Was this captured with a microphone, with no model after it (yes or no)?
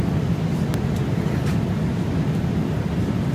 yes